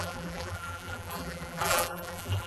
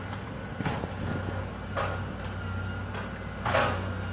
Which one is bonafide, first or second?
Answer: second